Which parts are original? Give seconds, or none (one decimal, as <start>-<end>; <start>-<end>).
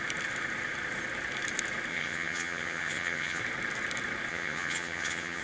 0.0-1.9; 3.4-4.3